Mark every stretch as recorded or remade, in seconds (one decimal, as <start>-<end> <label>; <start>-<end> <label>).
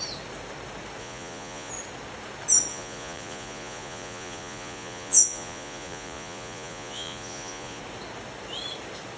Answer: 0.0-1.0 recorded; 1.0-1.7 remade; 1.7-2.7 recorded; 2.7-7.8 remade; 7.8-9.2 recorded